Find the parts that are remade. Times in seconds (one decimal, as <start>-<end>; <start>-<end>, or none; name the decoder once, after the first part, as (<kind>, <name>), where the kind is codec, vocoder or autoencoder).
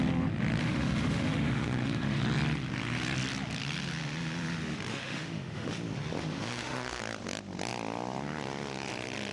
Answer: 0.6-2.2 (autoencoder, DAC-VAE); 4.9-5.7; 6.3-7.0